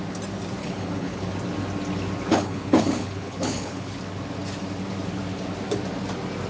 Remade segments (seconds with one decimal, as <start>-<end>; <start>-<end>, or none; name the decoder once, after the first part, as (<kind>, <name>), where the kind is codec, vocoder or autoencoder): 0.6-1.3 (codec, HILCodec); 2.3-4.0